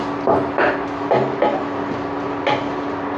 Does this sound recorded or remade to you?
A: recorded